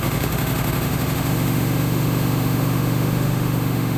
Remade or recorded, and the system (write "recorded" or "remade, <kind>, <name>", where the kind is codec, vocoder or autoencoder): remade, autoencoder, DAC-VAE